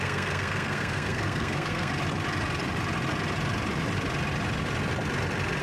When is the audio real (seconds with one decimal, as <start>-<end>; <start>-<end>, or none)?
1.9-5.6